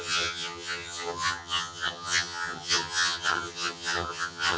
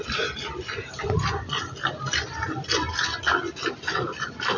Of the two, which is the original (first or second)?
second